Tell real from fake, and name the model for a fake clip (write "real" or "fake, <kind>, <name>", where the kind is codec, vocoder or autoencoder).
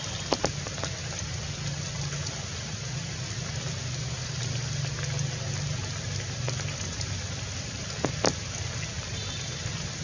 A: real